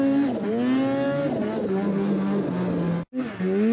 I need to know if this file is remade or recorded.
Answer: recorded